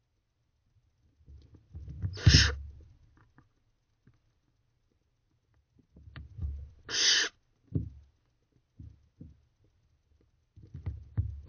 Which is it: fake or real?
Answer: real